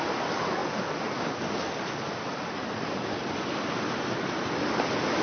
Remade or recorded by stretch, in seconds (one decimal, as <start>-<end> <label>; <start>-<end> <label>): 0.0-5.2 recorded